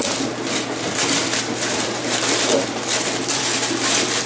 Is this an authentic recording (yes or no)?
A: no